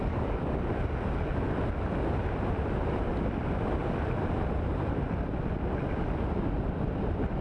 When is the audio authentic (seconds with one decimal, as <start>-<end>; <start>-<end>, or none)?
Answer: 0.6-7.4